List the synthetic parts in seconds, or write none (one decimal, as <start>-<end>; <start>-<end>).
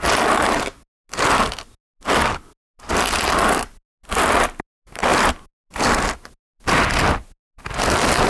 none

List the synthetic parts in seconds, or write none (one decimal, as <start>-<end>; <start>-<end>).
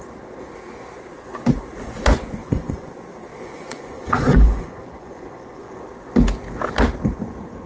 2.4-2.9; 3.3-5.8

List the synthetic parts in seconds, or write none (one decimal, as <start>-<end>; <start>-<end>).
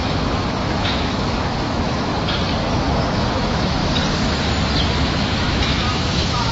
0.0-2.1; 2.7-3.8; 5.2-6.5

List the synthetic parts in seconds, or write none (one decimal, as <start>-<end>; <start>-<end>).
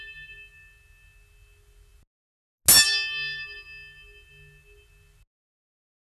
none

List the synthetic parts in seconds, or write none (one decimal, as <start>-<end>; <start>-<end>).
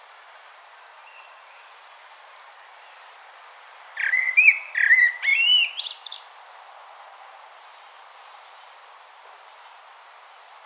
0.0-5.3; 6.0-10.7